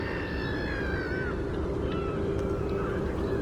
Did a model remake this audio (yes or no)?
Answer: no